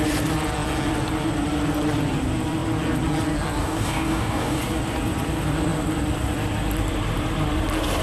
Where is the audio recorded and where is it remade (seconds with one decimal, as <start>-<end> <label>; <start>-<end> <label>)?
0.0-3.6 recorded; 3.6-4.6 remade; 4.6-8.0 recorded